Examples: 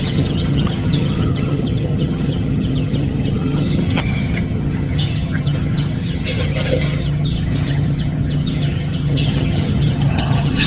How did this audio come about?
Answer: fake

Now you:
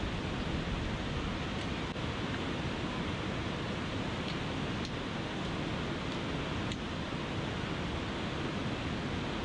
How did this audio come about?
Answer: real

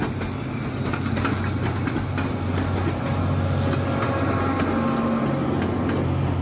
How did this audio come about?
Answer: real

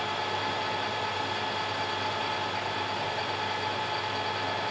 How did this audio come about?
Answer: real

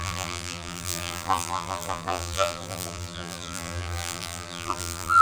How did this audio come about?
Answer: fake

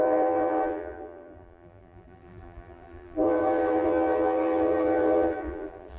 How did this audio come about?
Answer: fake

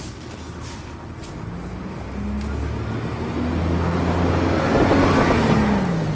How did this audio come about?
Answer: real